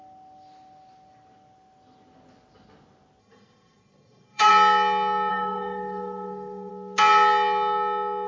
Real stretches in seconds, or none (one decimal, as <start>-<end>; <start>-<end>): 0.0-3.2; 4.5-5.3; 6.7-8.3